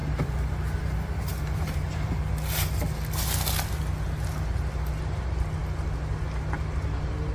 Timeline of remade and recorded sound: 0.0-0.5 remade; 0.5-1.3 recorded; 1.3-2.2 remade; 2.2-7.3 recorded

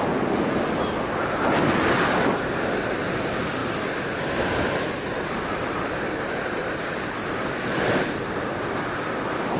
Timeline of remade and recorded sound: 0.0-9.6 recorded